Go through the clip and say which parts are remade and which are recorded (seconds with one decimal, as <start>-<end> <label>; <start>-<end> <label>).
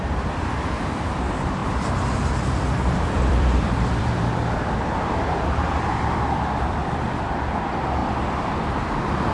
0.0-8.0 remade; 8.0-8.6 recorded; 8.6-9.3 remade